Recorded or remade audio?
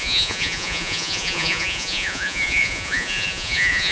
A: remade